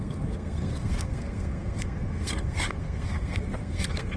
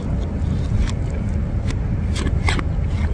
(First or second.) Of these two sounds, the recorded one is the second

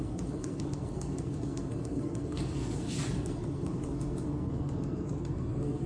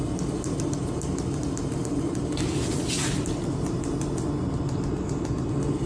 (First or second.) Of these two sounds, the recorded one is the second